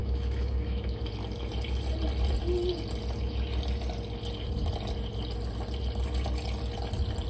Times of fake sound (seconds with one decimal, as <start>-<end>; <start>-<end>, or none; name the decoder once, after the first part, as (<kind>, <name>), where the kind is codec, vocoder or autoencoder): 0.0-1.0 (autoencoder, DAC-VAE)